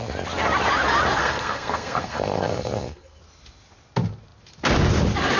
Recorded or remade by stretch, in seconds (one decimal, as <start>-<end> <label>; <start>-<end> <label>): 0.0-1.2 recorded; 1.2-3.2 remade; 3.2-5.4 recorded